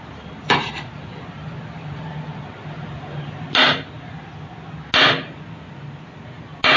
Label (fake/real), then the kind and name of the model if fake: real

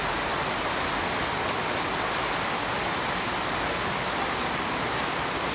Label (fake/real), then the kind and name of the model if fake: real